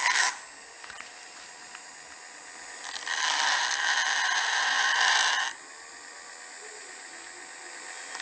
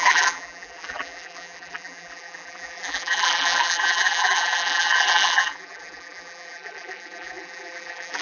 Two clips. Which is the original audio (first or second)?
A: first